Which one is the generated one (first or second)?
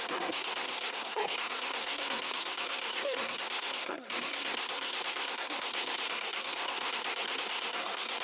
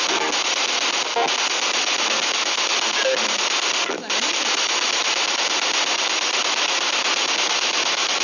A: first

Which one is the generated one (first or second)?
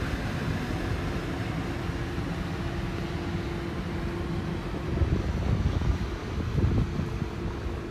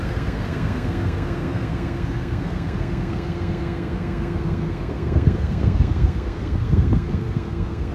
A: second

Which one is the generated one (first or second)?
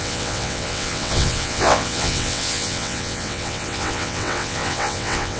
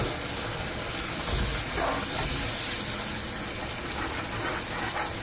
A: first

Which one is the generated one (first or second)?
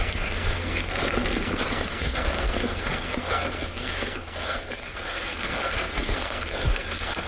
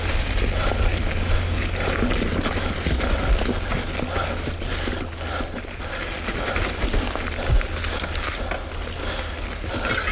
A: first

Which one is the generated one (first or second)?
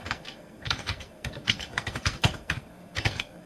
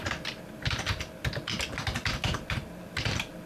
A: first